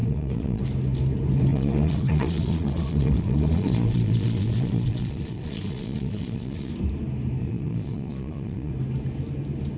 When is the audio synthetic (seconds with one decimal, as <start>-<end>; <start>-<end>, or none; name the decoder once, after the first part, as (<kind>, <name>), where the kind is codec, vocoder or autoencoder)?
0.0-0.6 (vocoder, Vocos); 1.5-6.7; 7.4-8.7